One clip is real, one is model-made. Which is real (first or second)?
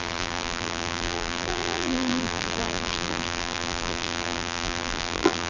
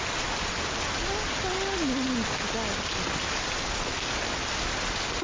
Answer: second